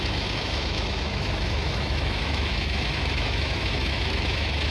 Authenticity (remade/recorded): remade